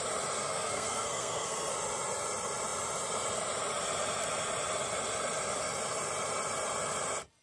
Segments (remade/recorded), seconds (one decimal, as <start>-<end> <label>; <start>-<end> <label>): 0.0-0.4 recorded; 0.4-1.7 remade; 1.7-7.4 recorded